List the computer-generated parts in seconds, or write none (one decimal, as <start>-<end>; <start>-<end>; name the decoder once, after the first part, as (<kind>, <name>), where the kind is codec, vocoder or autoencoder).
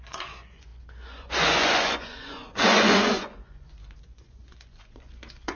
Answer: 0.0-5.5 (vocoder, Vocos)